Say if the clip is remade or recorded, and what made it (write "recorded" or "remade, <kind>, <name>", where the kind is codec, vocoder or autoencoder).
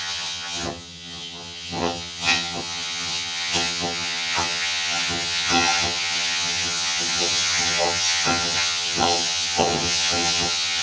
remade, vocoder, HiFi-GAN